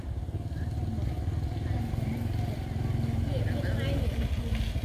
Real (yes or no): yes